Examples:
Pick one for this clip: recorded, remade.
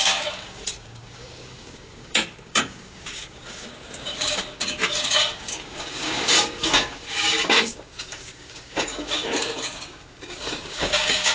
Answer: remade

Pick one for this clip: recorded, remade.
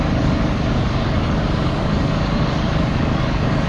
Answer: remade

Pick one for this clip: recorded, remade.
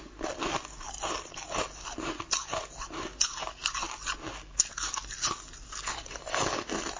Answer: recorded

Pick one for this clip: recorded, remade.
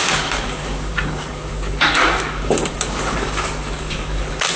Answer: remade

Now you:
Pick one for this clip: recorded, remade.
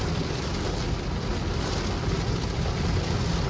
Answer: recorded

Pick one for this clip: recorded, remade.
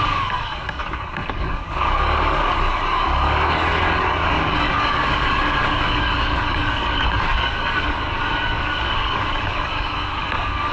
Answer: remade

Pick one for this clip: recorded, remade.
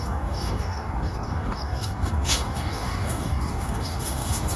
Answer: remade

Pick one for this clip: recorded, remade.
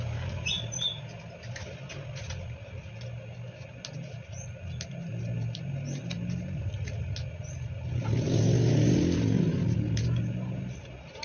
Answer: recorded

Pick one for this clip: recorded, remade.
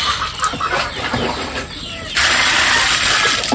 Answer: recorded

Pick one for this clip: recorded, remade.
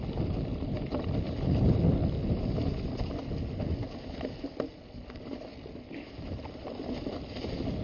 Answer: recorded